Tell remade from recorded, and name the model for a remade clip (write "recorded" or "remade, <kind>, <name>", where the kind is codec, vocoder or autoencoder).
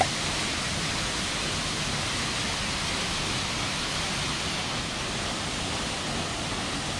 recorded